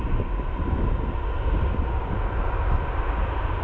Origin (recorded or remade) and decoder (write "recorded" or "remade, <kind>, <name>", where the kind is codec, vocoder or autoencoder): recorded